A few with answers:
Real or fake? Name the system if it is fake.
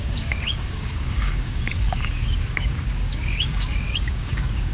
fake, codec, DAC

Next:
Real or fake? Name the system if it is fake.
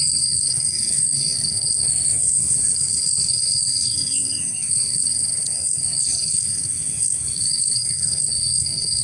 fake, codec, SNAC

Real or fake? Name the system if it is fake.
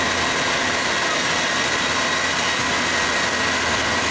real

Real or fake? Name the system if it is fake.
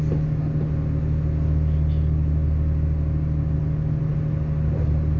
real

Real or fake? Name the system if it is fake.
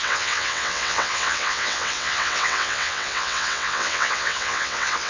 fake, vocoder, WaveNeXt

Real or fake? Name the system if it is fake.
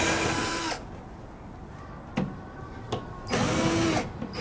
real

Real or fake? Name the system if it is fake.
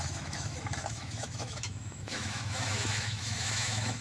fake, autoencoder, DAC-VAE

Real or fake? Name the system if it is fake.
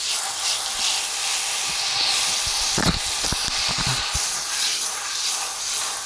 real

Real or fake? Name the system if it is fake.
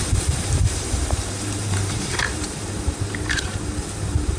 fake, vocoder, BigVGAN v2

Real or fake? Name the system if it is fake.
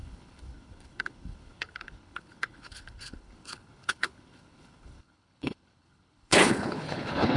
fake, codec, HILCodec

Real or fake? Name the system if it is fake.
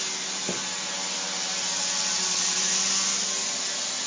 real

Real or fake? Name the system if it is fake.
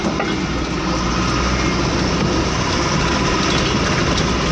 real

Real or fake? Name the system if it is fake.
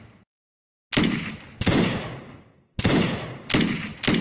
real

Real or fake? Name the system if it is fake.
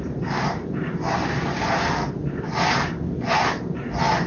real